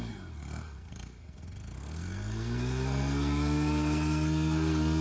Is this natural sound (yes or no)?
no